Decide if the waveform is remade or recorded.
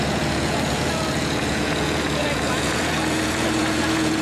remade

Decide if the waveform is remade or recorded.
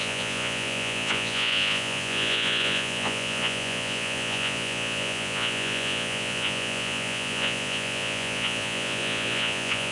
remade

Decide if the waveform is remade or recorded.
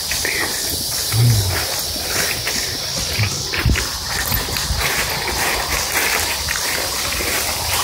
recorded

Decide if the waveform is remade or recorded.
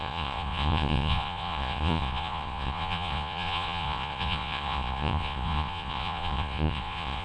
remade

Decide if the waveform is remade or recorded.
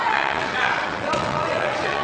remade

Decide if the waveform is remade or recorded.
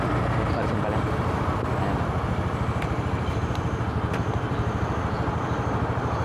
remade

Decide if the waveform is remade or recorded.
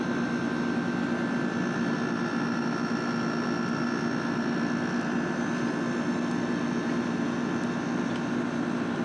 recorded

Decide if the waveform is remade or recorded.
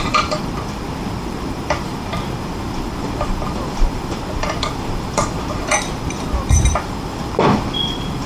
remade